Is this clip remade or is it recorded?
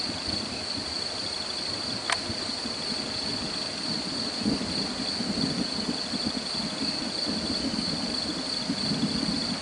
recorded